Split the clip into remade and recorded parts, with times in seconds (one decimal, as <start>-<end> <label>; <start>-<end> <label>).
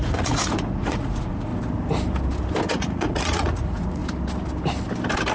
0.0-1.5 remade; 1.5-2.7 recorded; 2.7-4.0 remade; 4.0-5.3 recorded